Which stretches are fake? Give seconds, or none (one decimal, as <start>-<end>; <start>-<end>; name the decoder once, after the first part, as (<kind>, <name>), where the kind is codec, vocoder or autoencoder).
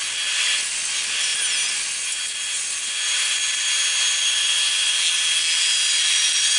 none